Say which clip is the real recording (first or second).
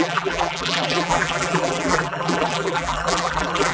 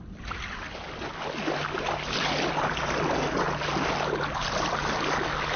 second